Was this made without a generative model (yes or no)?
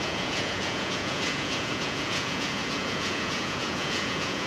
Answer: no